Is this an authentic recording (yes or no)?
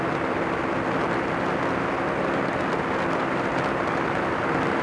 yes